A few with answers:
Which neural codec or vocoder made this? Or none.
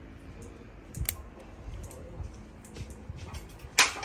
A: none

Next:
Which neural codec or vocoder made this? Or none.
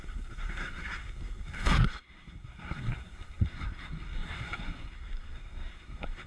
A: codec, SNAC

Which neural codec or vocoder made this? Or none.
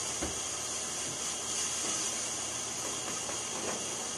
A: none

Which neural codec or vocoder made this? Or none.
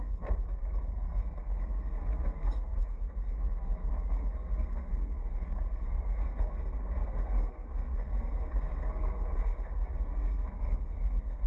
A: codec, SNAC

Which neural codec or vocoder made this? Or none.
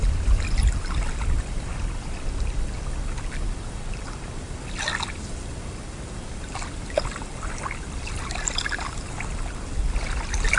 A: none